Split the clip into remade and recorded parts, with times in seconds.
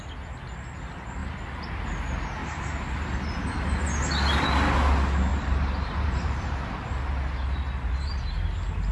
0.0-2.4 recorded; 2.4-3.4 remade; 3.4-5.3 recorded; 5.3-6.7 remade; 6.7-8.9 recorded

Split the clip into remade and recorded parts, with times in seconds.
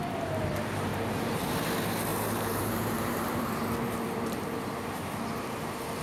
0.0-0.9 recorded; 0.9-1.4 remade; 1.4-2.1 recorded; 2.1-5.4 remade; 5.4-6.0 recorded